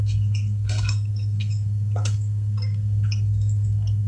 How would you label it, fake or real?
fake